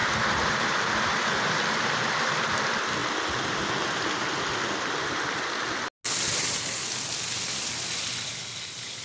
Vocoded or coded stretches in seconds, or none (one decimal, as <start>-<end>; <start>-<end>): none